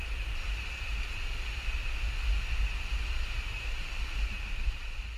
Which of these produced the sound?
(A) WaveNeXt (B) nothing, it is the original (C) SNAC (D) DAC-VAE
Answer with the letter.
B